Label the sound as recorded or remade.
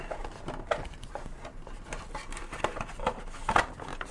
recorded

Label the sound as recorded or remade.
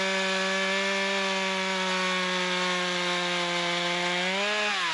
recorded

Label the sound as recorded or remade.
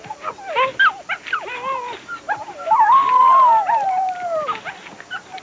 recorded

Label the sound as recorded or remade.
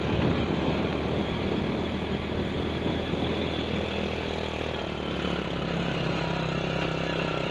recorded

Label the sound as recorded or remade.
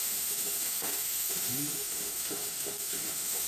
remade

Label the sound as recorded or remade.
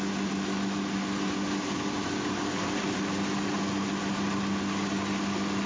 recorded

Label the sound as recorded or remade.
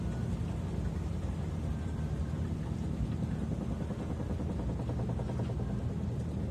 recorded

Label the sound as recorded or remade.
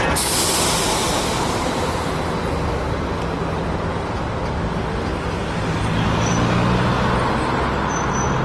recorded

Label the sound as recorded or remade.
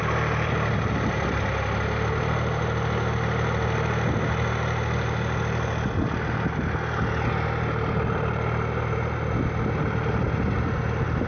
recorded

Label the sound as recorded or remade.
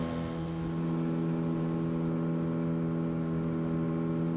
recorded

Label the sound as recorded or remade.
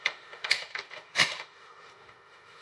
remade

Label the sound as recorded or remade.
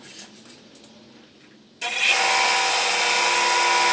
recorded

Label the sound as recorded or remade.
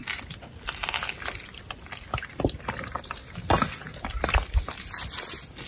recorded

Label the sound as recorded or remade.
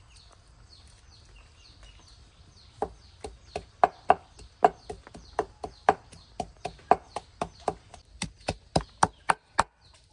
recorded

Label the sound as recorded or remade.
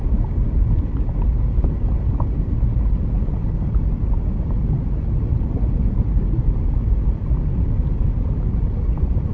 recorded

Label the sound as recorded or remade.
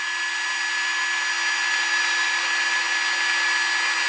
recorded